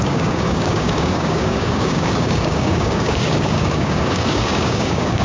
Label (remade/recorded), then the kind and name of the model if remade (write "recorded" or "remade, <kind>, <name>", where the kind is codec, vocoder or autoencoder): remade, codec, DAC